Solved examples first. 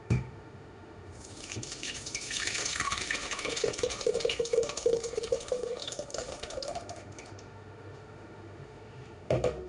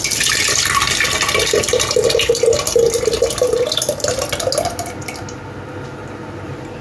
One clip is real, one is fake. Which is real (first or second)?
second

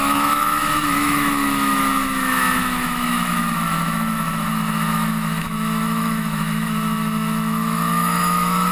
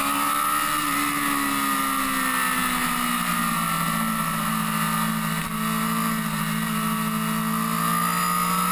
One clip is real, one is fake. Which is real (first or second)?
second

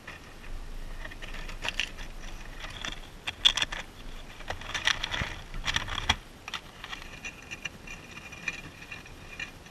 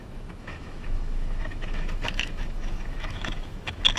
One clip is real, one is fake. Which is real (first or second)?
first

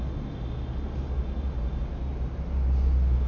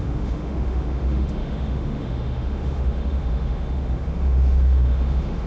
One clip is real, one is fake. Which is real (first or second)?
first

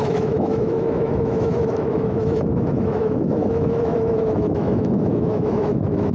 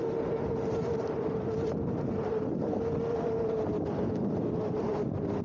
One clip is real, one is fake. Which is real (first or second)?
second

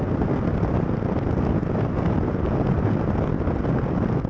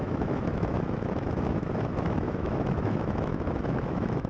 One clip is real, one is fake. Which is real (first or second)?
first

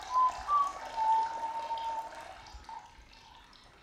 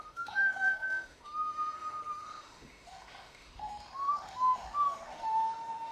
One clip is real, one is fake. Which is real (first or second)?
first